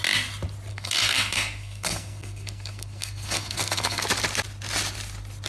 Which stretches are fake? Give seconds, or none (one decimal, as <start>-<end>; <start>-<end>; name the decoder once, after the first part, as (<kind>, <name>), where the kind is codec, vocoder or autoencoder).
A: 0.7-4.0 (codec, SNAC)